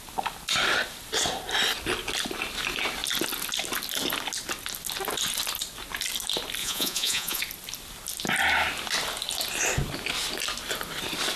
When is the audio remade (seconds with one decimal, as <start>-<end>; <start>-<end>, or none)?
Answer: 6.6-7.4